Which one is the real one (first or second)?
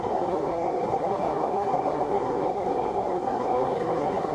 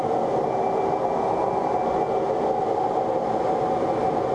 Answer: second